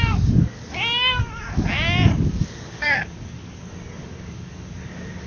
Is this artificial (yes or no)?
yes